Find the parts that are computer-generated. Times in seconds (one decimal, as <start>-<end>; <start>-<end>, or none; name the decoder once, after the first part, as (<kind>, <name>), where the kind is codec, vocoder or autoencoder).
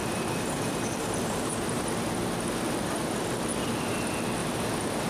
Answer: 0.0-1.8 (vocoder, BigVGAN v2); 4.4-5.1